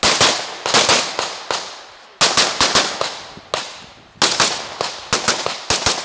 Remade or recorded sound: recorded